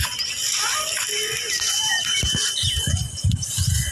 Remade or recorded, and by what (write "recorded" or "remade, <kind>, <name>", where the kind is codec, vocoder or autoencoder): recorded